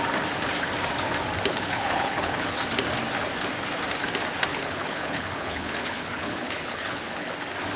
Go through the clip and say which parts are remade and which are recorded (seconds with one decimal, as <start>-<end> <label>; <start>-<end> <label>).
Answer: 0.0-1.5 recorded; 1.5-2.6 remade; 2.6-4.5 recorded; 4.5-7.3 remade; 7.3-7.8 recorded